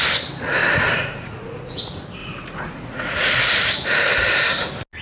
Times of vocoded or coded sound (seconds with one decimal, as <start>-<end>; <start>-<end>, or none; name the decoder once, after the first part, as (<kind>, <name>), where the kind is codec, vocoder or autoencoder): 0.6-1.8 (vocoder, Vocos); 2.2-3.4